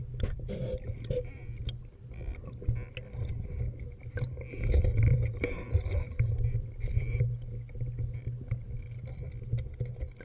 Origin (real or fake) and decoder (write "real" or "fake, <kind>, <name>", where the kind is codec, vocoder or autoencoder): real